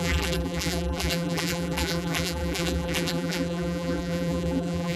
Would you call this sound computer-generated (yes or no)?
yes